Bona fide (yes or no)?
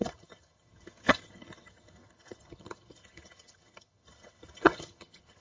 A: no